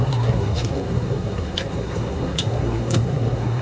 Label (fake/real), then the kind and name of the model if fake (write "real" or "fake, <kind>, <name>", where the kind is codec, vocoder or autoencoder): fake, codec, SNAC